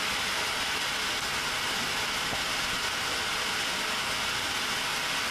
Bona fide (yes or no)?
yes